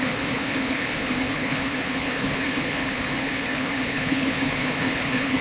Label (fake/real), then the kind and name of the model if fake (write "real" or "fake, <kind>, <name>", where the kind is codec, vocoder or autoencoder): fake, codec, HILCodec